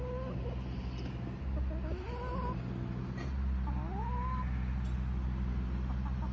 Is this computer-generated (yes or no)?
no